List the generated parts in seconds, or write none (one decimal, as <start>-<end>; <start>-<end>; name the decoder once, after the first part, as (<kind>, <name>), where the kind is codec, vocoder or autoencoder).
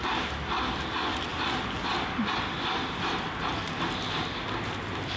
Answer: none